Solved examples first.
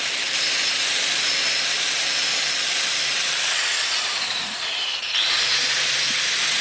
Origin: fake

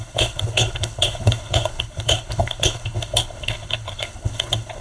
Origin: fake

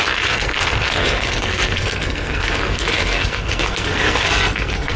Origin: fake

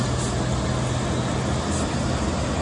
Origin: real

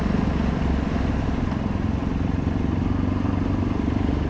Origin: real